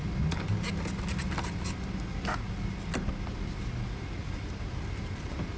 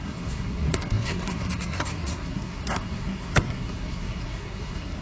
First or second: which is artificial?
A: second